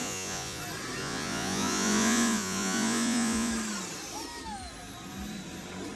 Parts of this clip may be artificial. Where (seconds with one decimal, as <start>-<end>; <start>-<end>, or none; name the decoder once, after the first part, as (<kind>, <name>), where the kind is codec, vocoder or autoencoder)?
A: 0.0-0.6 (vocoder, Vocos); 1.0-3.5